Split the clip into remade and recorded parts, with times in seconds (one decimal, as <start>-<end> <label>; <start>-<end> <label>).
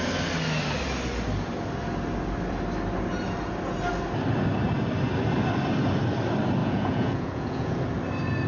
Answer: 0.0-6.6 recorded; 6.6-7.8 remade; 7.8-8.5 recorded